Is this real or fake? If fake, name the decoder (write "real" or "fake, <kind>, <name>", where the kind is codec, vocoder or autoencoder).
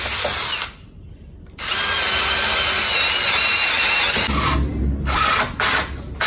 real